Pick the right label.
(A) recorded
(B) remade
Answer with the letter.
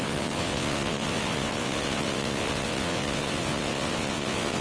B